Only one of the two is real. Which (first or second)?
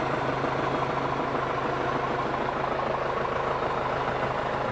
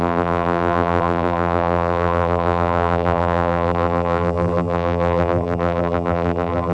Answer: first